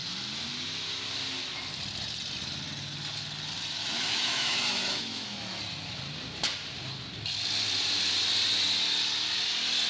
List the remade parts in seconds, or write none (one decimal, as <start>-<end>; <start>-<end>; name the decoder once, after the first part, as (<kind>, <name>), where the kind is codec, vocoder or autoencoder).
3.8-5.6 (autoencoder, DAC-VAE)

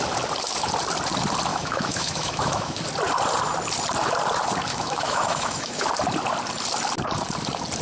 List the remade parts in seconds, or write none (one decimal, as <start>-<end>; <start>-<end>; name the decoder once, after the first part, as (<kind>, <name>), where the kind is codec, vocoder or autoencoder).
1.5-2.8 (autoencoder, DAC-VAE); 4.7-5.9